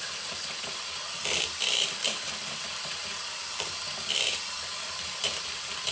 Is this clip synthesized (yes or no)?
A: yes